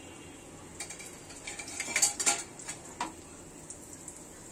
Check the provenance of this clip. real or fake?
real